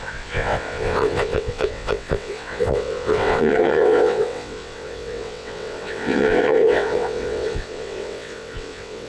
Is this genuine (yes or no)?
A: no